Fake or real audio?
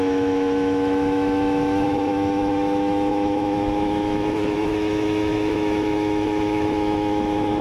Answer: fake